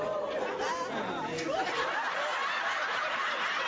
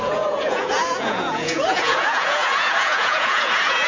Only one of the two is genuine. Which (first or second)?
first